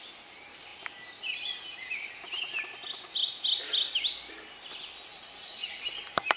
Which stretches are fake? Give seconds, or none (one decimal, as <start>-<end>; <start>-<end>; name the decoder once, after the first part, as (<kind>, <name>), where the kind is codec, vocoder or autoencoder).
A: 5.1-5.8 (vocoder, Vocos)